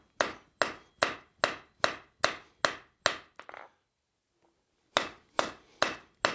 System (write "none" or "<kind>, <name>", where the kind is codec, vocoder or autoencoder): none